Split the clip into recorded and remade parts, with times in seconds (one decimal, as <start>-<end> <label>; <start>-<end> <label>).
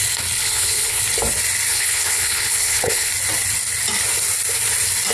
0.0-0.4 recorded; 0.4-1.0 remade; 1.0-1.7 recorded; 1.7-3.1 remade; 3.1-5.1 recorded